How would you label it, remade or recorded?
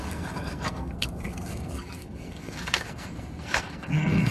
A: remade